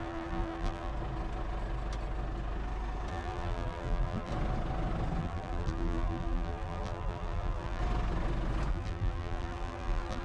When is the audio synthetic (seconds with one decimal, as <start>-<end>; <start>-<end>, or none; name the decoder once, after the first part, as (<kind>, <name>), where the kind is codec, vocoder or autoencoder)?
0.0-0.9 (vocoder, BigVGAN v2); 3.1-4.3; 5.2-7.8; 8.7-10.2